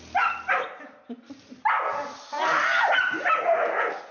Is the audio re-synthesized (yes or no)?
no